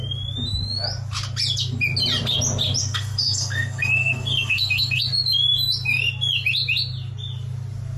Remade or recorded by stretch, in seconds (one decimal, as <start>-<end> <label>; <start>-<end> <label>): 0.0-2.8 recorded; 2.8-5.0 remade; 5.0-8.0 recorded